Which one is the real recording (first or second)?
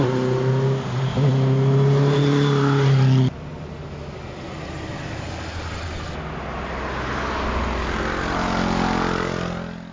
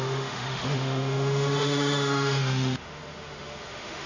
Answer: first